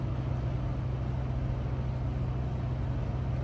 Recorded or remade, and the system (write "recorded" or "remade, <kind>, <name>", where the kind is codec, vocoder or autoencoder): recorded